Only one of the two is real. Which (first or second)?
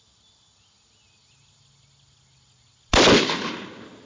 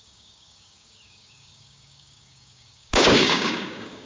first